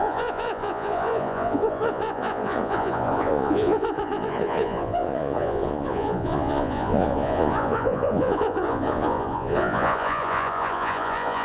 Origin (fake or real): fake